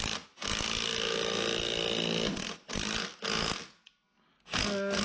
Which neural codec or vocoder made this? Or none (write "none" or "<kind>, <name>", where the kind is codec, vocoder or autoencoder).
none